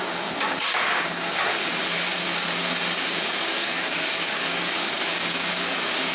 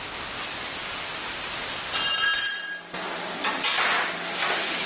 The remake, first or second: first